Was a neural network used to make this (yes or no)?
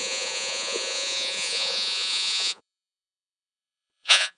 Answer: yes